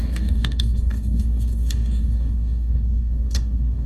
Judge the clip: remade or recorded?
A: remade